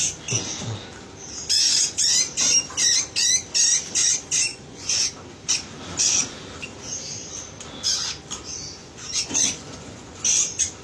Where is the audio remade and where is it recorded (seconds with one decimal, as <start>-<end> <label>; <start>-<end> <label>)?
0.0-4.5 recorded; 4.5-5.1 remade; 5.1-8.8 recorded; 8.8-10.2 remade; 10.2-10.8 recorded